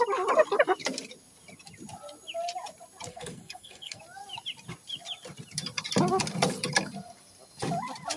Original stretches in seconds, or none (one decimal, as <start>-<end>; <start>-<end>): 0.0-3.1; 4.0-8.2